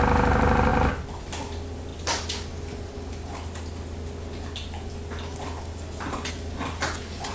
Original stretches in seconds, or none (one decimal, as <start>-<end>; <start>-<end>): 0.0-7.3